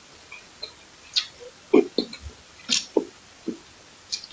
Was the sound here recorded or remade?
recorded